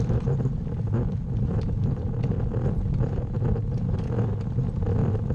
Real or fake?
real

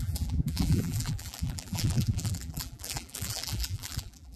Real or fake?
fake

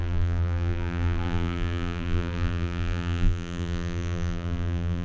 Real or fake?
fake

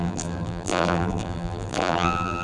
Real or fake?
fake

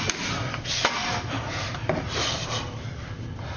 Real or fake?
fake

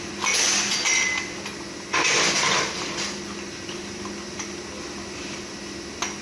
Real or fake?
real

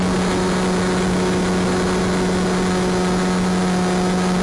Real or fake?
real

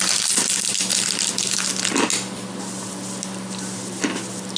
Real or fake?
real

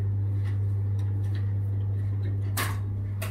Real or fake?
real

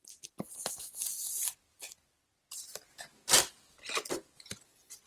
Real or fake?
real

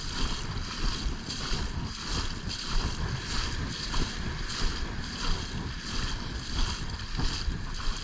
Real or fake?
real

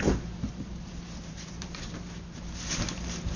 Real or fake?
fake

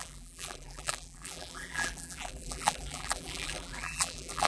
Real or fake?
fake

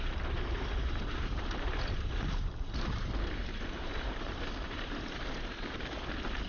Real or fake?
fake